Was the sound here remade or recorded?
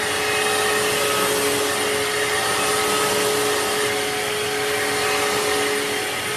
recorded